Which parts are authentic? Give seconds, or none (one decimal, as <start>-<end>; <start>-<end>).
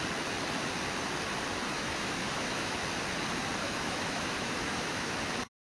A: 0.0-1.7; 2.8-3.6; 5.2-5.7